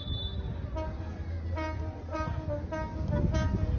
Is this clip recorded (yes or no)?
yes